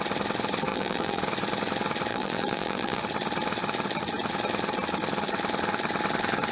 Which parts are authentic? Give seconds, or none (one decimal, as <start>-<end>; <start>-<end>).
0.0-0.7; 1.2-2.1; 3.0-6.5